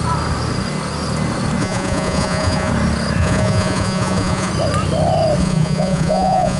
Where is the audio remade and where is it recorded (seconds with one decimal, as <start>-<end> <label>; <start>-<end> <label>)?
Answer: 0.0-1.6 recorded; 1.6-2.7 remade; 2.7-3.2 recorded; 3.2-4.5 remade; 4.5-5.4 recorded; 5.4-6.6 remade